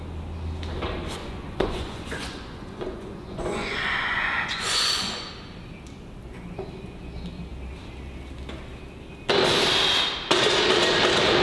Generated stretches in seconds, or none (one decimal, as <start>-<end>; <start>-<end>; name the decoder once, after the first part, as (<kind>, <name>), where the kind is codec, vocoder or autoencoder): 1.2-5.3 (vocoder, Vocos)